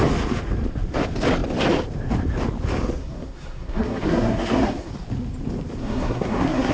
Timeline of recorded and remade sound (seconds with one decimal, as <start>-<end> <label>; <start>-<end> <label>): 0.0-3.0 recorded; 3.0-4.9 remade; 4.9-5.8 recorded; 5.8-6.7 remade